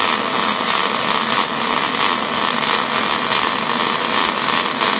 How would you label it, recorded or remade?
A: recorded